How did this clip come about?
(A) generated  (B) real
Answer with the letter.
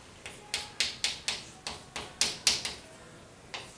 B